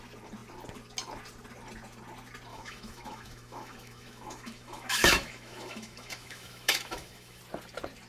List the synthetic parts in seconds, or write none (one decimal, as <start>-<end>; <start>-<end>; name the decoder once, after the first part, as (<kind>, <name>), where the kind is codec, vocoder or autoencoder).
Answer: 2.5-7.4 (autoencoder, DAC-VAE)